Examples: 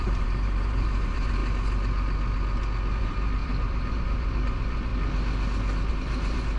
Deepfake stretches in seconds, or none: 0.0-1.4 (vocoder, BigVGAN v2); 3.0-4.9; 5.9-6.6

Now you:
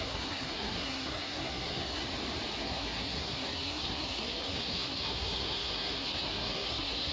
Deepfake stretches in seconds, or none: 0.0-2.0 (codec, SNAC); 2.5-7.1